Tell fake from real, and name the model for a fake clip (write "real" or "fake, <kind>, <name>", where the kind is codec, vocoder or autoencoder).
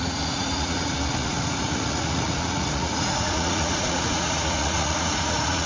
fake, vocoder, Vocos